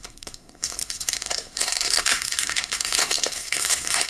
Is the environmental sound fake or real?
fake